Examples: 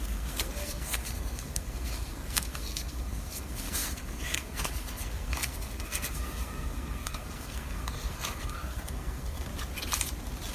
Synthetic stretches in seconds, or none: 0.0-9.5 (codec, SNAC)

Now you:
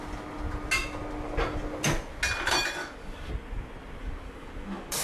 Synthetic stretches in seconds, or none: 2.8-3.3 (codec, DAC); 4.0-5.0